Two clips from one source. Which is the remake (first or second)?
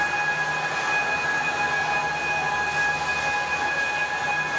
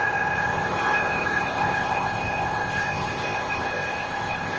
second